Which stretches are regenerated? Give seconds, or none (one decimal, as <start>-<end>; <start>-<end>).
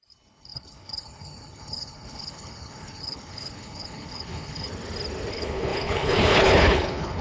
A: 0.0-4.7; 5.3-7.2